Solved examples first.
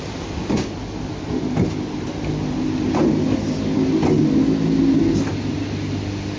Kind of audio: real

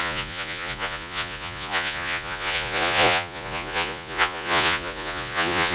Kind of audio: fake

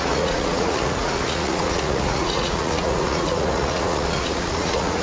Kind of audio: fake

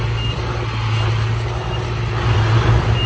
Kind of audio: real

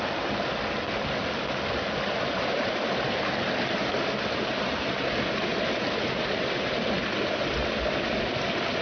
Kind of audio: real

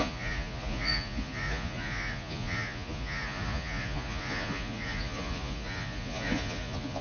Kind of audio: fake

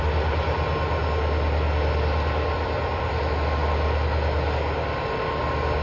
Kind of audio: real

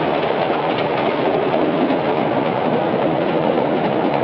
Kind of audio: fake